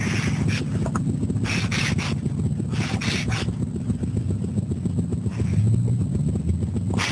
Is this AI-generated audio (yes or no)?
no